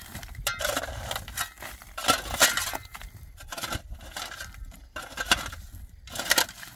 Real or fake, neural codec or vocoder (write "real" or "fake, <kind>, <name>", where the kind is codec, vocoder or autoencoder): real